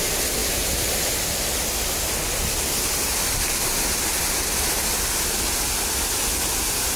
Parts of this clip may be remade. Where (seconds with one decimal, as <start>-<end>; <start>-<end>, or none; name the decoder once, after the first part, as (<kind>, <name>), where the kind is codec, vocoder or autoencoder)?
none